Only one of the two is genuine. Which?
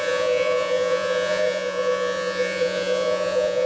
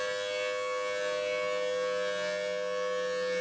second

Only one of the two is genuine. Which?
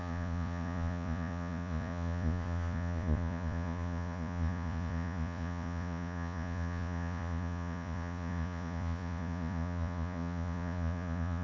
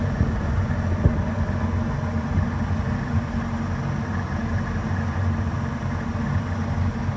second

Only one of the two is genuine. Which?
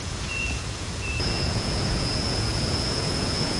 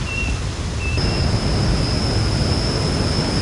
second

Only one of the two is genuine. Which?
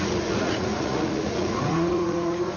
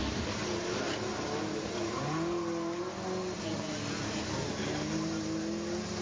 second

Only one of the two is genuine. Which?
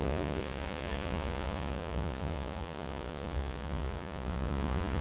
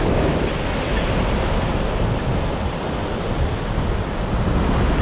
second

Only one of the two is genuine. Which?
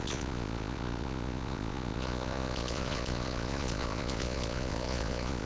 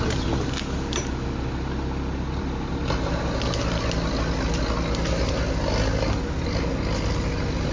second